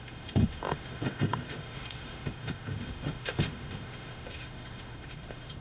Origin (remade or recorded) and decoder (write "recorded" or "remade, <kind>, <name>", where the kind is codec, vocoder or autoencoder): remade, autoencoder, DAC-VAE